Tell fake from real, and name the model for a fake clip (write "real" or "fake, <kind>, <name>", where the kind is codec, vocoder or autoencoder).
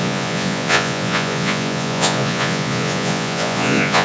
fake, vocoder, Vocos